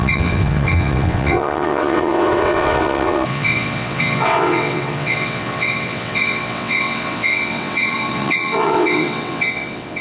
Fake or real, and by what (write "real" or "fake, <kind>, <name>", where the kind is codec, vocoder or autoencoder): fake, vocoder, WaveNeXt